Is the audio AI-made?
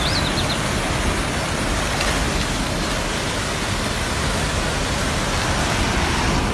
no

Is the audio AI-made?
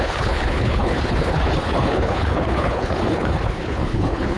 yes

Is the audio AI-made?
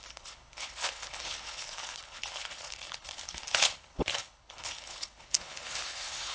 yes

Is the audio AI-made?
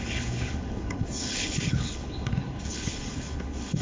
yes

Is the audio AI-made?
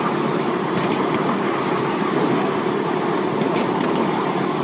no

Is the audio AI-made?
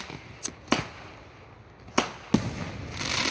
no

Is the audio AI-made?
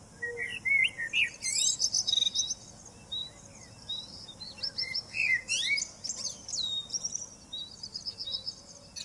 no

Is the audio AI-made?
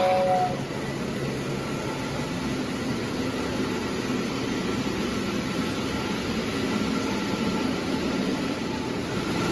no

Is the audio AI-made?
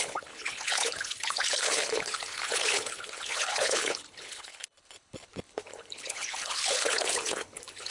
yes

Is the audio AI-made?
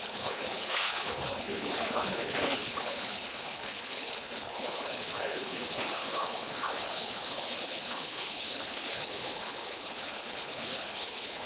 yes